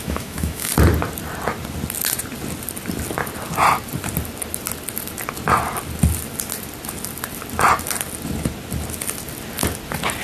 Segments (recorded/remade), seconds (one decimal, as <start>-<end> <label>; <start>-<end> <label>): 0.0-0.7 remade; 0.7-10.2 recorded